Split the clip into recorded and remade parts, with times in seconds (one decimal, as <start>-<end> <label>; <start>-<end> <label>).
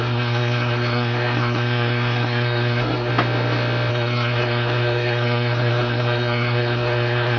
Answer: 0.0-3.1 remade; 3.1-3.9 recorded; 3.9-7.4 remade